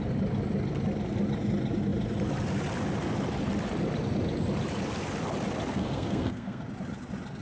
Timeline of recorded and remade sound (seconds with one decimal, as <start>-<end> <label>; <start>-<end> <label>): 0.0-5.7 recorded; 5.7-6.6 remade; 6.6-7.4 recorded